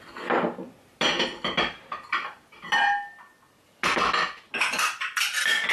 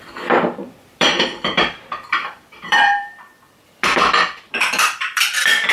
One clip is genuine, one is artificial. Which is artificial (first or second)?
second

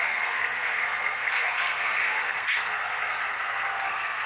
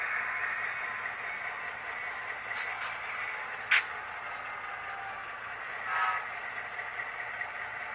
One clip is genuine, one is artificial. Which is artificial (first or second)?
first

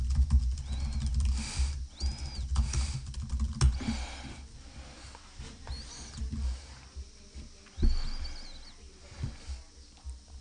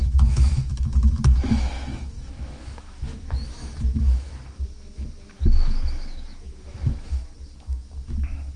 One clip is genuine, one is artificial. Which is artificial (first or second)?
second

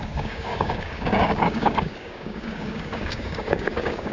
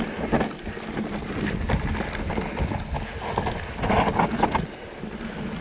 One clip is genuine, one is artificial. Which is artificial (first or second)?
first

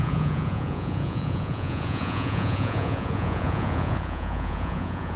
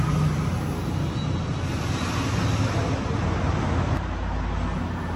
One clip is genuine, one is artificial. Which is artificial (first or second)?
first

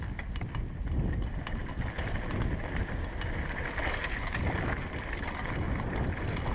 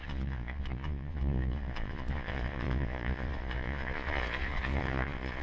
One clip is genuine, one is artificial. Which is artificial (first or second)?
second